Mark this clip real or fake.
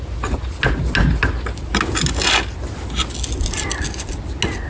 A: real